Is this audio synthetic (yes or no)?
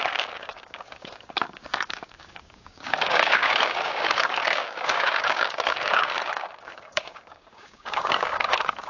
yes